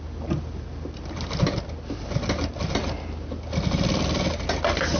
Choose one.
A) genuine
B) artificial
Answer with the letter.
A